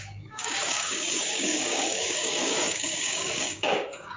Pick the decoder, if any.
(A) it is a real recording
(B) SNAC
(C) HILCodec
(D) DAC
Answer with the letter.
D